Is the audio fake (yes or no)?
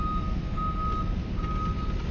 no